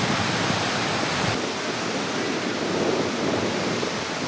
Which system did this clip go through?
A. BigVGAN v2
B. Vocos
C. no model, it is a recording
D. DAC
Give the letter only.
C